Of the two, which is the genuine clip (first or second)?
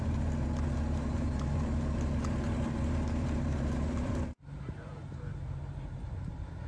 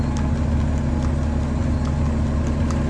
second